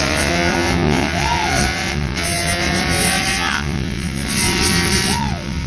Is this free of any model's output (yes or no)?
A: no